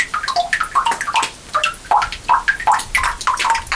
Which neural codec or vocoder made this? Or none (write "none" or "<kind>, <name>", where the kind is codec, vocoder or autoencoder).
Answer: none